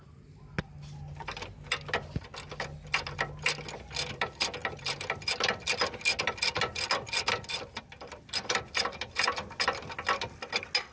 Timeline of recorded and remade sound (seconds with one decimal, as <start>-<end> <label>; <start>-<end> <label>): 0.0-10.9 recorded